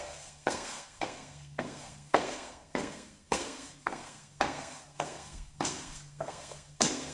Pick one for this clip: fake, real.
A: fake